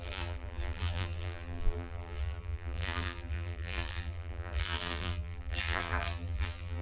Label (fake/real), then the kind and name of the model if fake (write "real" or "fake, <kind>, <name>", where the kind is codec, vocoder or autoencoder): fake, vocoder, BigVGAN v2